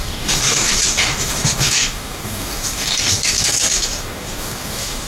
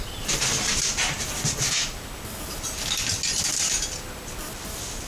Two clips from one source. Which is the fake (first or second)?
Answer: first